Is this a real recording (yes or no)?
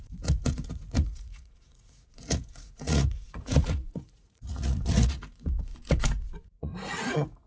no